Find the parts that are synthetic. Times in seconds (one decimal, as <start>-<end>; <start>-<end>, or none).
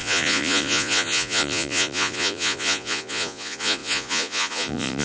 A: 0.0-5.0